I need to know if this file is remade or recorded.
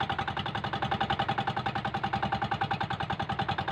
recorded